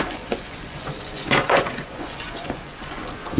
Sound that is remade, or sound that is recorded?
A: remade